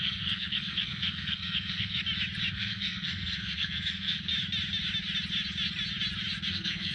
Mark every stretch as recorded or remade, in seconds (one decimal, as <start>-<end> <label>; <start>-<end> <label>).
0.0-2.0 remade; 2.0-2.5 recorded; 2.5-4.3 remade; 4.3-6.5 recorded; 6.5-6.9 remade